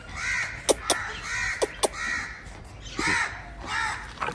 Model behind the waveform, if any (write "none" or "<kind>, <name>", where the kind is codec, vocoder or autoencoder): none